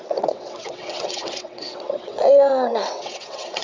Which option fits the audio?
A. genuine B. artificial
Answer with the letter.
B